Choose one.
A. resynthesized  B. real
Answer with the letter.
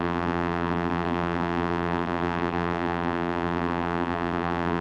A